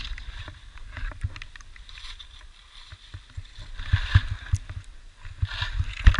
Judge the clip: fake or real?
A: fake